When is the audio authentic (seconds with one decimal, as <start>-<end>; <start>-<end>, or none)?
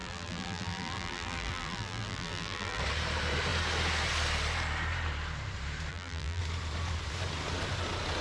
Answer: 2.8-5.9; 6.4-8.2